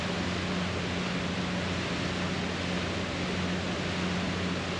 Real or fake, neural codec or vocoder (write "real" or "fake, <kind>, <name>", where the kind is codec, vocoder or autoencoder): real